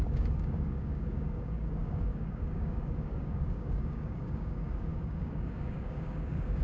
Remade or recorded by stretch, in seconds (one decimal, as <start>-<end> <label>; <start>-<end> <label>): 0.0-6.6 remade